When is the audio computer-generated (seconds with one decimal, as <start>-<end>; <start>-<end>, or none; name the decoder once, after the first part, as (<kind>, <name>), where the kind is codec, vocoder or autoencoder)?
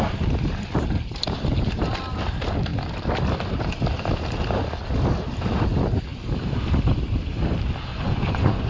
7.9-8.7 (vocoder, Vocos)